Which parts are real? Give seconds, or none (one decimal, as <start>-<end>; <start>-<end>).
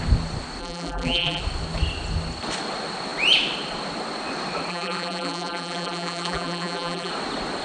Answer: 0.0-0.6; 1.4-4.7; 7.1-7.6